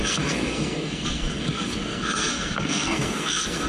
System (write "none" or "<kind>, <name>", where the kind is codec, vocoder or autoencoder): codec, SNAC